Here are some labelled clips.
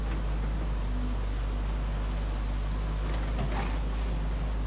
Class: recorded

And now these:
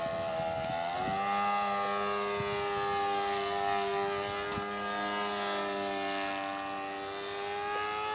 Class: recorded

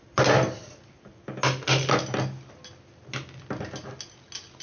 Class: recorded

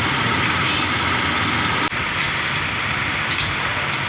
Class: recorded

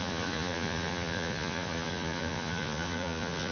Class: remade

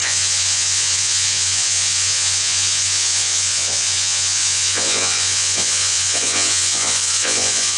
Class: remade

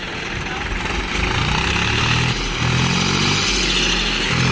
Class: recorded